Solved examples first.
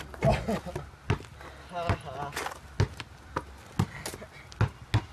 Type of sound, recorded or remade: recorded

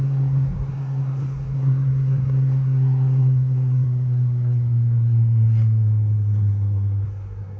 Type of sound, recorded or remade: remade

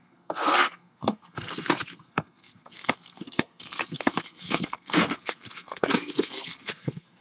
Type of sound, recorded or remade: remade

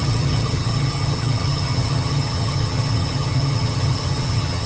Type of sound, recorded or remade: remade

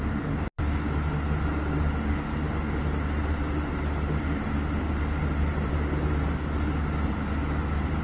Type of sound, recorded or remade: recorded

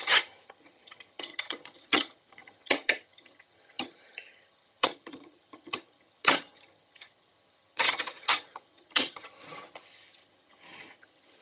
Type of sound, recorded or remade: remade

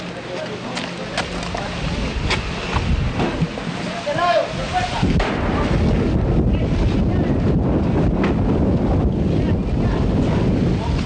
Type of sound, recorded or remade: recorded